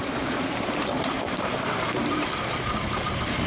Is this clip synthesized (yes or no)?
yes